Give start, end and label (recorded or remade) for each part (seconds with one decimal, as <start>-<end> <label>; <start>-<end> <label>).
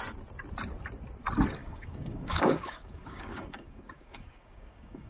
0.0-1.6 recorded; 1.6-5.1 remade